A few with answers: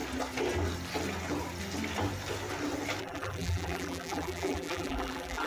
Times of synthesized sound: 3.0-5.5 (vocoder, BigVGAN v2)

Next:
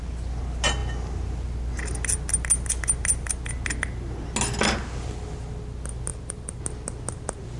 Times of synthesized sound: 6.1-6.6 (vocoder, BigVGAN v2)

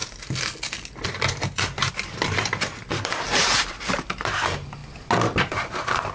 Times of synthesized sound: 1.9-4.8 (vocoder, BigVGAN v2); 5.4-6.1

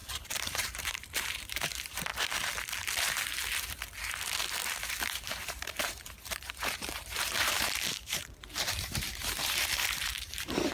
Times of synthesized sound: 0.0-2.1 (vocoder, BigVGAN v2); 5.0-10.7

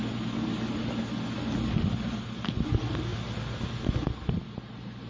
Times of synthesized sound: none

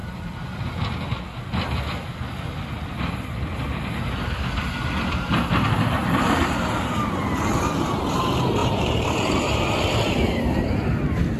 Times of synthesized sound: 6.0-8.2 (vocoder, BigVGAN v2); 8.6-9.7

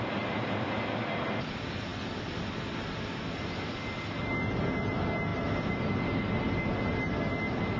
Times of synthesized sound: none